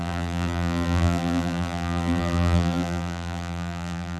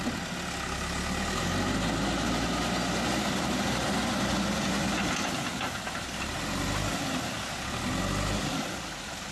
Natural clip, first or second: second